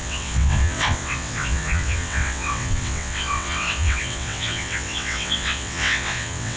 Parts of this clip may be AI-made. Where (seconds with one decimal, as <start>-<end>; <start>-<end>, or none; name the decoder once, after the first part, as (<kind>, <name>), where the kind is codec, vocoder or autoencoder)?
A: 0.0-6.6 (vocoder, WaveNeXt)